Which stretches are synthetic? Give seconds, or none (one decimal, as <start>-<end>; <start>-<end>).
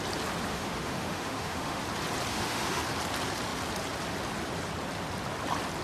0.5-1.8; 2.3-2.8